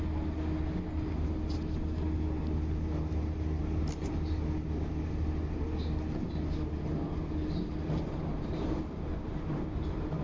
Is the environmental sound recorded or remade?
recorded